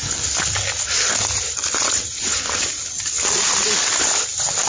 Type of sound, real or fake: real